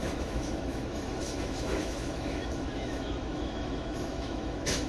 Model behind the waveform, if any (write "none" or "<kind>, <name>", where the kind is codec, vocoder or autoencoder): autoencoder, DAC-VAE